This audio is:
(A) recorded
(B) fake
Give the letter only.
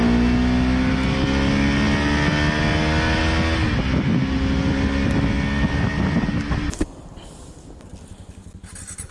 A